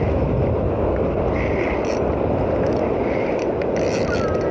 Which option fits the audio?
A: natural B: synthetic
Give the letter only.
A